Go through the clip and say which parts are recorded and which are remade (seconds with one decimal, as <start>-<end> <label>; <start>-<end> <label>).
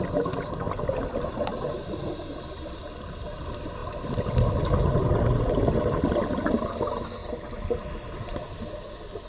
0.0-9.3 recorded